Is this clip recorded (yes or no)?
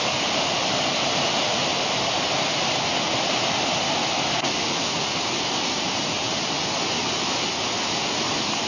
yes